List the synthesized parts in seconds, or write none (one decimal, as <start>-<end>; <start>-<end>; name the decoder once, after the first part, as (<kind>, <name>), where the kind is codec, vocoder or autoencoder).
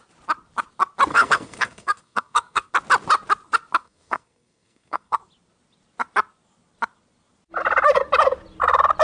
1.1-2.7 (codec, SNAC); 3.8-5.2